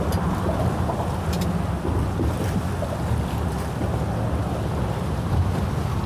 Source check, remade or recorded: recorded